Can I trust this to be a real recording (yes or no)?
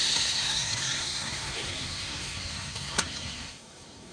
no